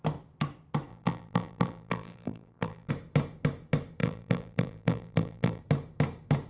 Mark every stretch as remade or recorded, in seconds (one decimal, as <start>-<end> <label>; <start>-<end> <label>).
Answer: 0.0-0.9 recorded; 0.9-2.9 remade; 2.9-4.0 recorded; 4.0-5.6 remade; 5.6-6.5 recorded